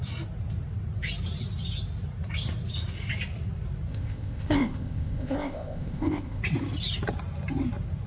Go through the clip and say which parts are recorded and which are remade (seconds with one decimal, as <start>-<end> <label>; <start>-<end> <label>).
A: 0.0-3.9 recorded; 3.9-6.4 remade; 6.4-8.1 recorded